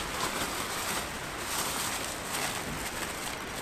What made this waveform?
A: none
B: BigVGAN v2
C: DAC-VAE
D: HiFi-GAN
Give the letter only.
A